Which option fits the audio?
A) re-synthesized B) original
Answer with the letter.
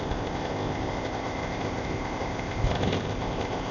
A